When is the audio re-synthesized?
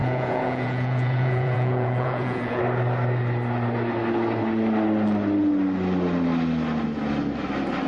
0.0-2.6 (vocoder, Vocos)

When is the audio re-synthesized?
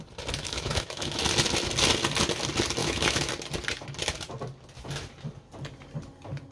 0.4-1.2 (autoencoder, DAC-VAE); 2.8-3.3